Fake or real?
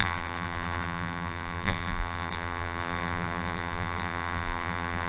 fake